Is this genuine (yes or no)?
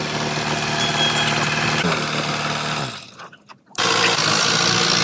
yes